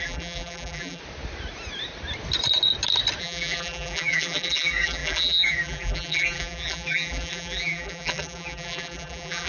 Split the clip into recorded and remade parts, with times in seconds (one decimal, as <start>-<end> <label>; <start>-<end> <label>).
0.0-1.0 remade; 1.0-3.2 recorded; 3.2-9.5 remade